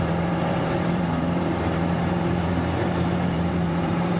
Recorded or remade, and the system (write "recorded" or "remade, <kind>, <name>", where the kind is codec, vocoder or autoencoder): remade, vocoder, BigVGAN v2